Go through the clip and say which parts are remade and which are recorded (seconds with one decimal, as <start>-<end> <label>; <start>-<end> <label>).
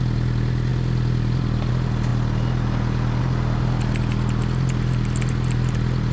0.0-6.1 recorded